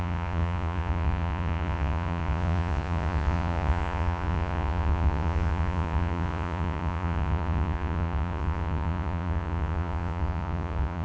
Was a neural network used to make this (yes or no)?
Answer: yes